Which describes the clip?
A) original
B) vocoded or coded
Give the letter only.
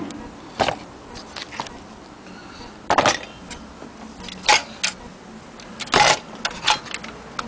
A